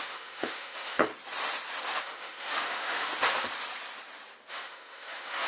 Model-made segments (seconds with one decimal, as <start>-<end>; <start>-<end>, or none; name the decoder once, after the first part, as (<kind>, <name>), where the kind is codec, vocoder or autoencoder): 0.0-1.1 (autoencoder, DAC-VAE); 1.8-3.1; 4.5-5.5